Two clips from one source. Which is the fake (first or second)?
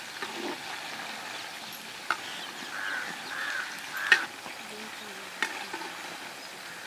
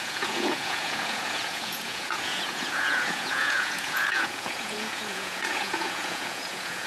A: second